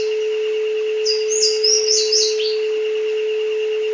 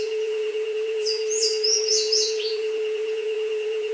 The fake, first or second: second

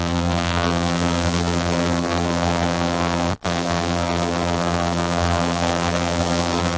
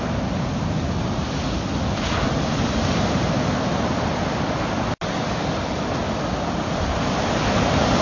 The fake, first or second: first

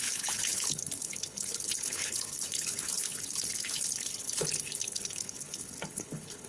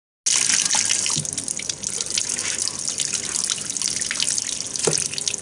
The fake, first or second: first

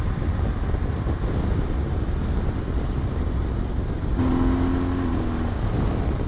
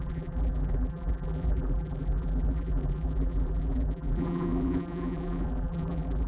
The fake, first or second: second